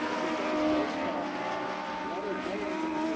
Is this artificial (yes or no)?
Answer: no